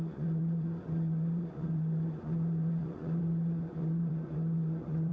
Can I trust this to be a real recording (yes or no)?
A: no